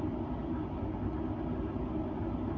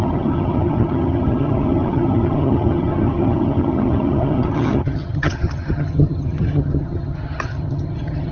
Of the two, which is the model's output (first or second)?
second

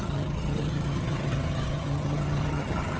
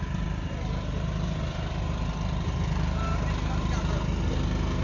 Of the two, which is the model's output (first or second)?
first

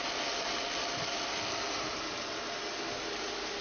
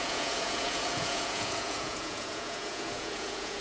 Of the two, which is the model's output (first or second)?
second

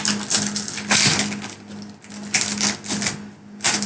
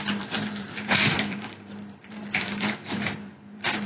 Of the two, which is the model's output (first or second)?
second